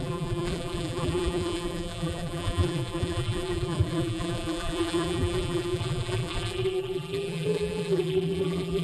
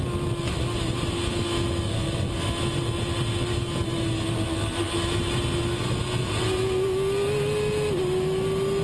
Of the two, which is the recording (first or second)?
second